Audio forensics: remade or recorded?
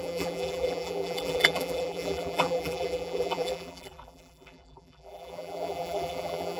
remade